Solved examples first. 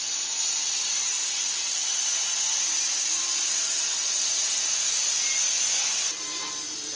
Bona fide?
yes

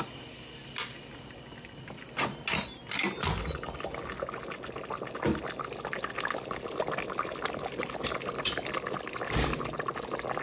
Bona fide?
yes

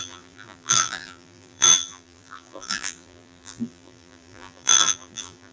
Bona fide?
no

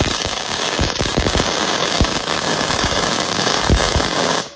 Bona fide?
no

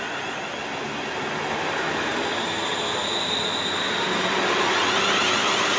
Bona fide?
yes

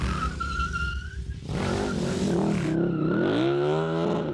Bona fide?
yes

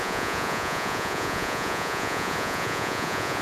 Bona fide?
no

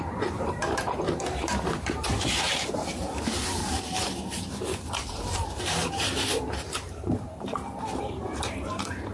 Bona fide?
no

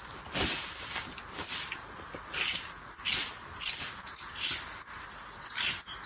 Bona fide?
yes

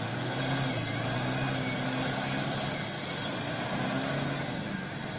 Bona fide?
yes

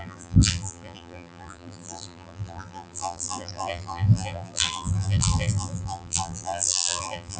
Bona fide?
no